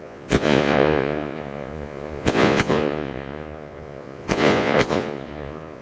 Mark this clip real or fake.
fake